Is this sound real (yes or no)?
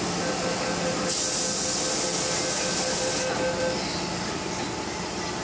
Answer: yes